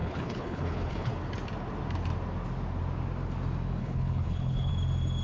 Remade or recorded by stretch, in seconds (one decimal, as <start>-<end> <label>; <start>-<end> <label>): 0.0-1.1 remade; 1.1-3.8 recorded; 3.8-4.7 remade; 4.7-5.2 recorded